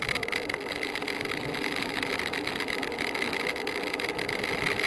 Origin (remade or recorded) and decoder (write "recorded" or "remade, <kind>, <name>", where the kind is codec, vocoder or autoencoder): recorded